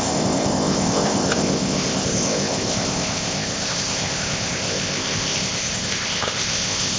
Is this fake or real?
fake